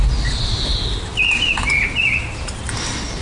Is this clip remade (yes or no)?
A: no